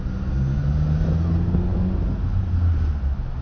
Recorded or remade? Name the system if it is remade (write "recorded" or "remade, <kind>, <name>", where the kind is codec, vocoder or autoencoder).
recorded